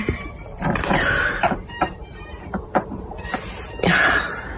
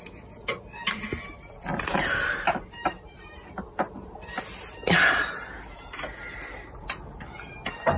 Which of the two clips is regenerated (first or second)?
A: first